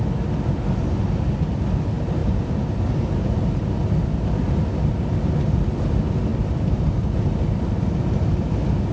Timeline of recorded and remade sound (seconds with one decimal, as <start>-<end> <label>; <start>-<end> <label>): 0.0-2.2 recorded; 2.2-3.8 remade; 3.8-8.9 recorded